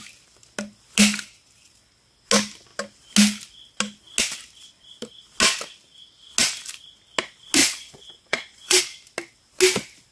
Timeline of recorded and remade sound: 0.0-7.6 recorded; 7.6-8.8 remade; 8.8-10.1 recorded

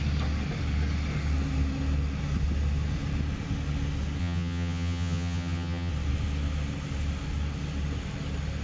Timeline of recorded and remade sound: 0.0-4.2 recorded; 4.2-5.9 remade; 5.9-8.6 recorded

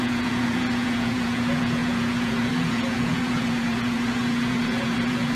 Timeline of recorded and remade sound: 0.0-5.3 remade

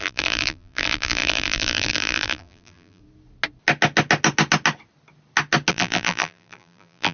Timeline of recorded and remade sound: 0.0-3.0 remade; 3.0-5.7 recorded; 5.7-7.1 remade

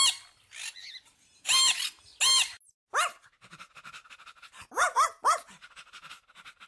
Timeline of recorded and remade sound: 0.0-6.7 recorded

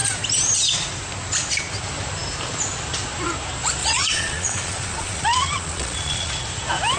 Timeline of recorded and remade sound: 0.0-3.8 recorded; 3.8-6.3 remade; 6.3-7.0 recorded

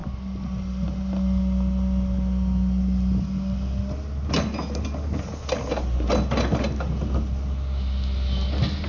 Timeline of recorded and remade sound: 0.0-8.9 recorded